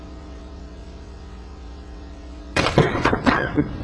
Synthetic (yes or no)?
yes